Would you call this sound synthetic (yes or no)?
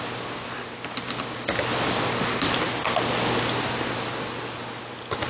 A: no